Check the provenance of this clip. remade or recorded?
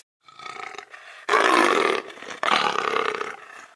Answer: recorded